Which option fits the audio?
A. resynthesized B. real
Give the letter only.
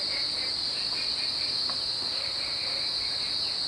B